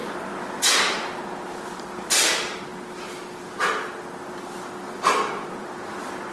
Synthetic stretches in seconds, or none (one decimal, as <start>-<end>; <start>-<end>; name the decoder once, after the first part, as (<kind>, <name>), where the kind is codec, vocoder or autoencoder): none